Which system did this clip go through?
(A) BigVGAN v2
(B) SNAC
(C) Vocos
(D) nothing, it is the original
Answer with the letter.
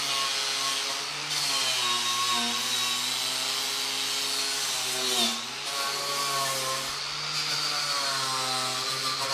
D